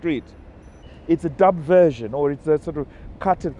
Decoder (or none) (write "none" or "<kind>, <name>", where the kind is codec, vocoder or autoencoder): none